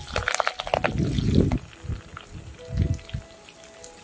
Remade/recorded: recorded